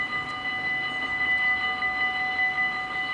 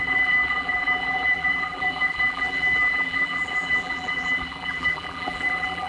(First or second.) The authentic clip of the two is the first